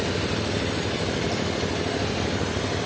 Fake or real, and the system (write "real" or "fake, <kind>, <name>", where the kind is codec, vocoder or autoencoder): real